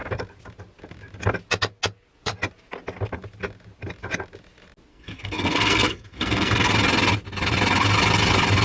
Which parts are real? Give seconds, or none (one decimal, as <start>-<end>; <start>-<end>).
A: 0.0-4.9; 6.7-8.6